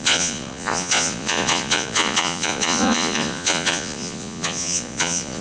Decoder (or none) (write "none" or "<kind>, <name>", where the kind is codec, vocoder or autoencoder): vocoder, Vocos